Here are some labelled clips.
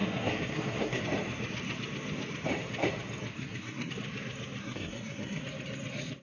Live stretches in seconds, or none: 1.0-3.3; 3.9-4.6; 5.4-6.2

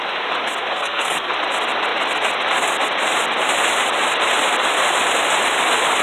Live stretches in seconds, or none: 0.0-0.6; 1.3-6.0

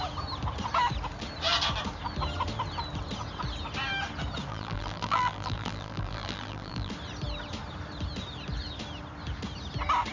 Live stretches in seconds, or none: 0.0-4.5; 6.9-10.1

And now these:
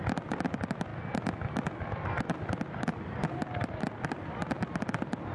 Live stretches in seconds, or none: 0.0-5.3

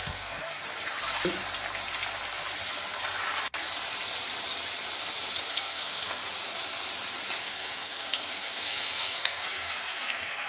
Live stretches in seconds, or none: 0.6-5.5; 6.2-7.4

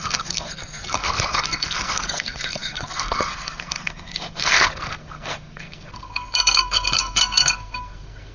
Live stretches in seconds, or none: none

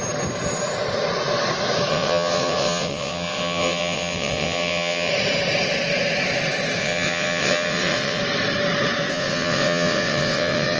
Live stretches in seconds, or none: 0.0-1.9; 5.1-6.8; 8.2-9.1

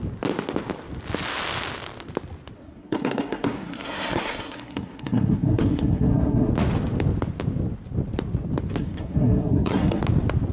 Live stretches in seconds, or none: 0.0-2.6; 6.5-8.8; 10.0-10.5